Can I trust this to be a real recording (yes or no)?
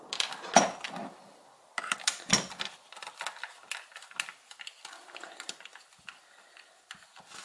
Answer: yes